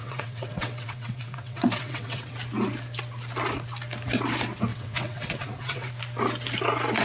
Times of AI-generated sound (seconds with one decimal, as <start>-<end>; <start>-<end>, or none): 0.0-2.3; 4.7-5.9